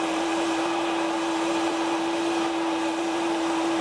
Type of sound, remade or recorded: remade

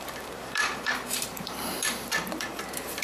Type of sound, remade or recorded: remade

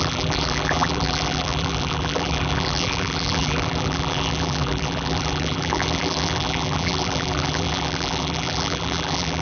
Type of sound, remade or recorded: remade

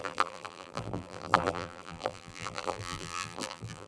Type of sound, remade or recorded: remade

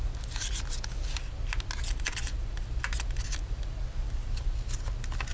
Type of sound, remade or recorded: recorded